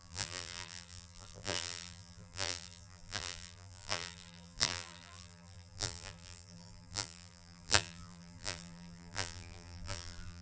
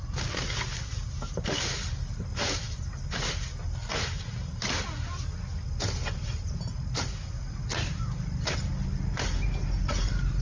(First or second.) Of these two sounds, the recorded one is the second